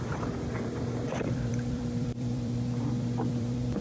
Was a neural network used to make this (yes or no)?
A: yes